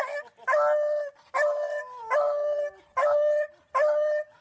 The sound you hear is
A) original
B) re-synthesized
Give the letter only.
A